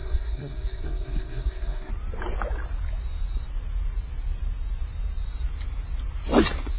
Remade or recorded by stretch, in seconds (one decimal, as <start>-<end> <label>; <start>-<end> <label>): 0.0-1.9 remade; 1.9-6.8 recorded